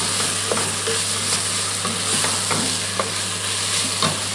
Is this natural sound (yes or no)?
yes